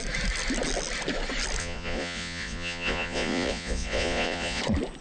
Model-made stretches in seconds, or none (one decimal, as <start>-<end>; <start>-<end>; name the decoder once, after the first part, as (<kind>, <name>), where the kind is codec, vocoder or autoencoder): 1.6-4.6 (vocoder, Vocos)